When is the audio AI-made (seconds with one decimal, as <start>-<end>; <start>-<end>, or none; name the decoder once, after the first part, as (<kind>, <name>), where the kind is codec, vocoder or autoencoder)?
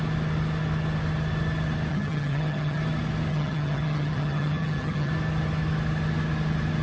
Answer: 1.9-2.8 (vocoder, HiFi-GAN); 3.3-5.1